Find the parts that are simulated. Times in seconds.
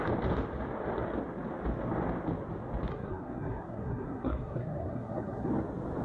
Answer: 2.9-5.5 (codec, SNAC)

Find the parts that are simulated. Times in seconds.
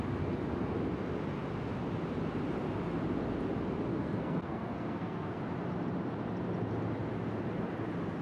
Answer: 3.9-5.4 (codec, SNAC)